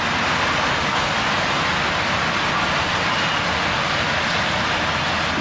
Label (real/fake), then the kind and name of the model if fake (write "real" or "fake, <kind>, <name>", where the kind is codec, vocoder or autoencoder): real